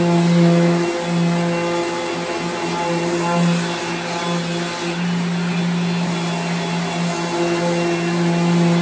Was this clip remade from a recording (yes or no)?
no